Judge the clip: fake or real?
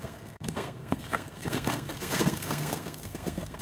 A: fake